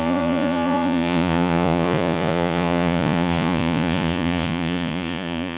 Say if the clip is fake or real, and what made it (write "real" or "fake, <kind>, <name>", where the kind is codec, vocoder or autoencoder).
fake, vocoder, Vocos